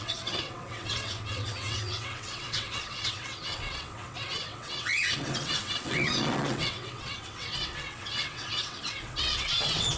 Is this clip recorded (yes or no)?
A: no